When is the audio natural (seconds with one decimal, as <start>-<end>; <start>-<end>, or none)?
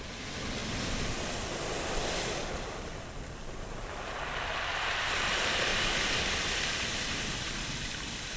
0.6-2.5; 5.7-6.4